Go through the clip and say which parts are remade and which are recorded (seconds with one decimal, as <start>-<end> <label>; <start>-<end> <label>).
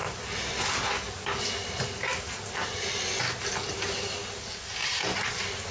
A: 0.0-5.7 recorded